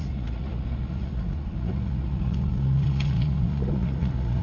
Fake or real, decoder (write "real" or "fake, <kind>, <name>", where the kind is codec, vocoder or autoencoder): fake, vocoder, Vocos